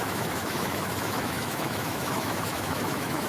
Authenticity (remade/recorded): remade